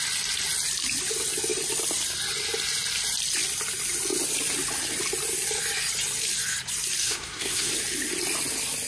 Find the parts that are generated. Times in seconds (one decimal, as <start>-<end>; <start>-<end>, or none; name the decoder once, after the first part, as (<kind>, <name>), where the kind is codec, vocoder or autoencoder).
7.0-7.7 (codec, SNAC)